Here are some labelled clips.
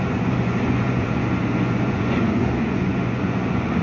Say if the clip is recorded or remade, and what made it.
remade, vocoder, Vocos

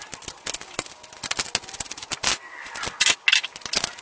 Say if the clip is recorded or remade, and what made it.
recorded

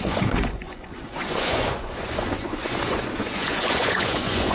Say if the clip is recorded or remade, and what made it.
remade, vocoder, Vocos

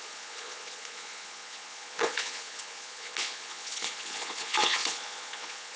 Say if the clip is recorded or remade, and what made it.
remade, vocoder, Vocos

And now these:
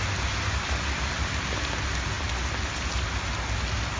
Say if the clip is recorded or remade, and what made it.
recorded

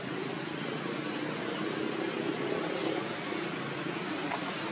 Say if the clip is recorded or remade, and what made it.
recorded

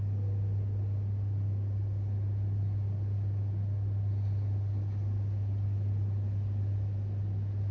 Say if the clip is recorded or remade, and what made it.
recorded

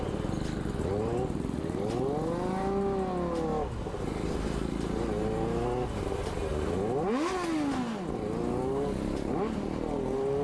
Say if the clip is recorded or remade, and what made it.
recorded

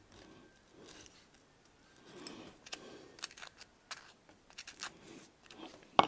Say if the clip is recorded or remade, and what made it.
recorded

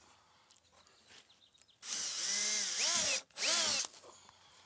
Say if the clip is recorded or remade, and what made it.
recorded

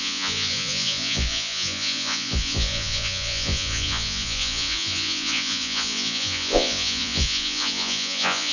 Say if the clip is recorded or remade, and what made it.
remade, vocoder, Vocos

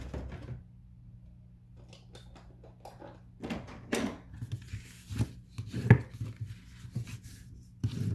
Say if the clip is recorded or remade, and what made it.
recorded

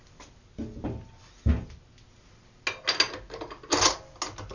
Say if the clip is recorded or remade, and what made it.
recorded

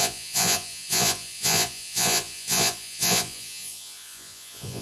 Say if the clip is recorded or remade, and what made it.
remade, vocoder, Vocos